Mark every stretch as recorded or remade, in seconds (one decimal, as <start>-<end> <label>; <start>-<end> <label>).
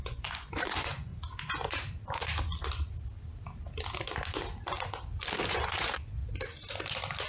0.0-1.1 remade; 1.1-5.5 recorded; 5.5-6.2 remade; 6.2-7.3 recorded